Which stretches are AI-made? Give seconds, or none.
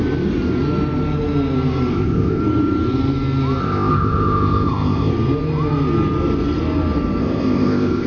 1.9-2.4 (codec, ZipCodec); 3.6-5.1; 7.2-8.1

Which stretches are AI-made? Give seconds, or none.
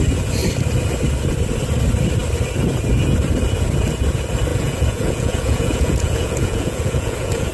4.5-7.5 (vocoder, Vocos)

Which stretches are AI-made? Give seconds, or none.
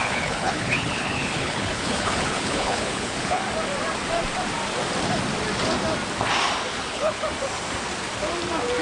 0.0-3.4 (codec, HILCodec); 6.7-7.2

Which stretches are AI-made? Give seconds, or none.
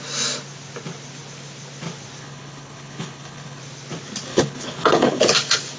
2.2-3.6 (codec, HILCodec); 4.3-5.2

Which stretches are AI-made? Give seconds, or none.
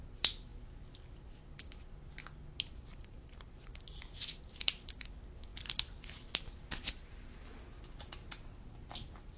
2.7-3.8 (vocoder, BigVGAN v2)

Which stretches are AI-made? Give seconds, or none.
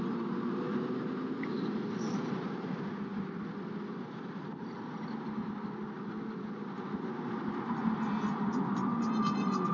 none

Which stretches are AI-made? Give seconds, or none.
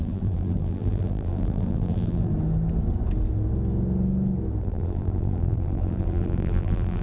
0.0-2.3 (vocoder, BigVGAN v2); 4.6-7.0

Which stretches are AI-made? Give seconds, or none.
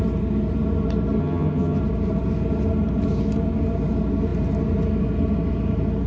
1.2-1.8 (vocoder, HiFi-GAN)